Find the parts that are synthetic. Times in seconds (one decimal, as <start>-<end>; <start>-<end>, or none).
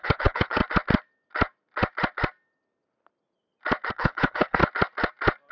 0.0-0.6; 3.9-4.6